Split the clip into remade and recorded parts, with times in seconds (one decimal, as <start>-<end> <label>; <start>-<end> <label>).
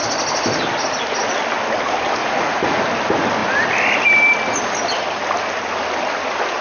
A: 0.0-2.2 recorded; 2.2-2.8 remade; 2.8-6.6 recorded